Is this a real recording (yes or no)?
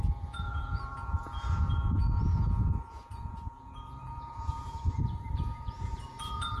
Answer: no